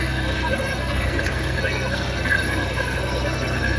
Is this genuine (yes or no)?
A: no